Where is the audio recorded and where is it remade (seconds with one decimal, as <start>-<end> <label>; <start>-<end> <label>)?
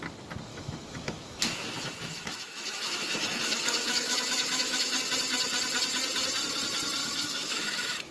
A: 0.0-0.5 recorded; 0.5-5.0 remade; 5.0-7.0 recorded; 7.0-8.1 remade